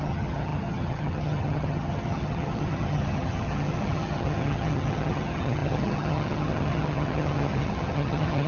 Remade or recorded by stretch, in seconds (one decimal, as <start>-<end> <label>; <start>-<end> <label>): 0.0-8.5 remade